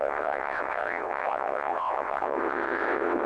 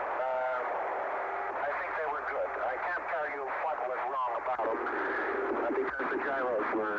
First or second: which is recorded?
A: second